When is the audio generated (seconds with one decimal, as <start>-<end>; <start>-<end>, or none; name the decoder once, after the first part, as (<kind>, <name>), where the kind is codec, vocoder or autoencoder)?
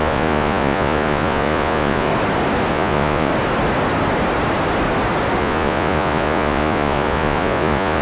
0.0-2.1 (vocoder, Vocos); 2.7-3.3; 5.4-8.0